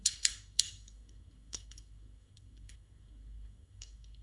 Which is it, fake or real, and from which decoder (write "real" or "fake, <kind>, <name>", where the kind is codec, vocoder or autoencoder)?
fake, codec, SNAC